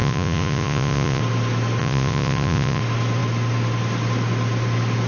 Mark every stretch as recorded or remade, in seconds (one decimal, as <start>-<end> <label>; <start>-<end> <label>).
0.0-1.2 remade; 1.2-1.8 recorded; 1.8-2.8 remade; 2.8-5.1 recorded